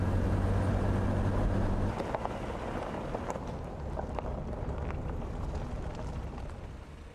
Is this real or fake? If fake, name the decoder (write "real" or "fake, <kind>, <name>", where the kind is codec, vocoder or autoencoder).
real